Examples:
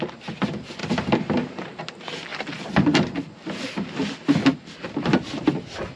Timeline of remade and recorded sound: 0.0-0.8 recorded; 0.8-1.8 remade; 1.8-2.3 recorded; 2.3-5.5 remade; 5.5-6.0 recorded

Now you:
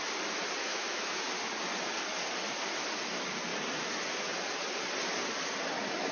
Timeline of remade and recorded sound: 0.0-0.6 recorded; 0.6-1.3 remade; 1.3-6.1 recorded

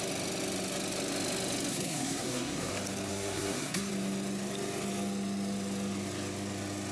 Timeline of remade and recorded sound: 0.0-1.7 recorded; 1.7-2.7 remade; 2.7-3.1 recorded; 3.1-3.9 remade; 3.9-6.9 recorded

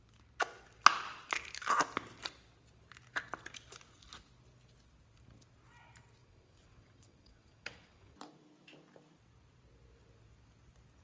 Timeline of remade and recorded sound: 0.0-6.2 recorded; 6.2-8.1 remade; 8.1-11.0 recorded

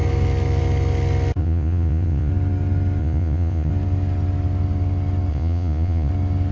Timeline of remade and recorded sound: 0.0-1.4 recorded; 1.4-2.3 remade; 2.3-3.0 recorded; 3.0-3.7 remade; 3.7-5.3 recorded; 5.3-6.1 remade; 6.1-6.5 recorded

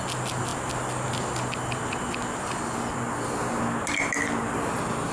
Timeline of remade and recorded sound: 0.0-5.1 recorded

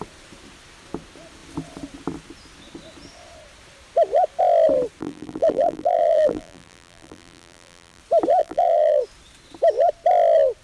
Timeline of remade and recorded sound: 0.0-5.0 recorded; 5.0-8.0 remade; 8.0-8.4 recorded; 8.4-9.0 remade; 9.0-10.6 recorded